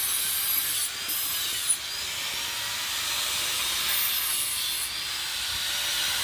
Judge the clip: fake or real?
real